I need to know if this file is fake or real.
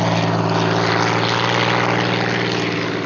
real